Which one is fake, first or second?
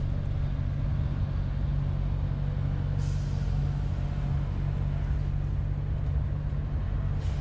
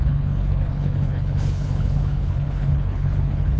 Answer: second